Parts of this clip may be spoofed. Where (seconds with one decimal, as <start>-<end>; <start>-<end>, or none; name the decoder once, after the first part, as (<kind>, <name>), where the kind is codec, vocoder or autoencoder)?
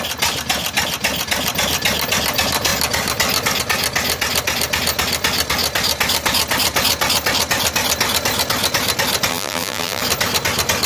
9.3-10.0 (vocoder, BigVGAN v2)